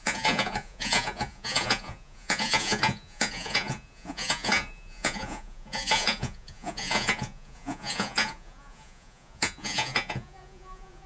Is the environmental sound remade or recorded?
remade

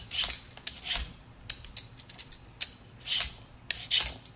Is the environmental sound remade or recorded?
recorded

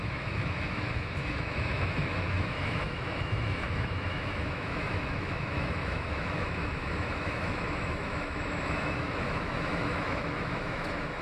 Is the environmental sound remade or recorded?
remade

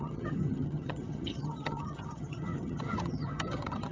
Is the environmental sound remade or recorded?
remade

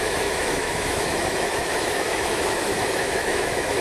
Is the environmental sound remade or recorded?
remade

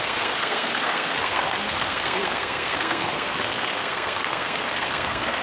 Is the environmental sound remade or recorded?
remade